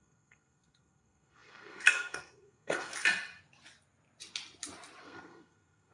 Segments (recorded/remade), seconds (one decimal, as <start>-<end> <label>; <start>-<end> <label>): 0.0-2.9 remade; 2.9-5.0 recorded; 5.0-5.9 remade